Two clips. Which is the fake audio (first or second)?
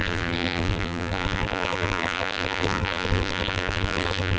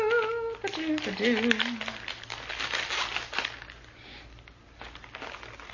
first